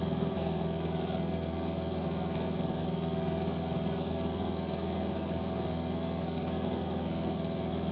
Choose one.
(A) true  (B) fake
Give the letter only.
B